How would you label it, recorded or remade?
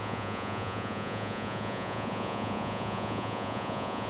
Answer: remade